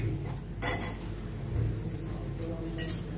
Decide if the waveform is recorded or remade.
recorded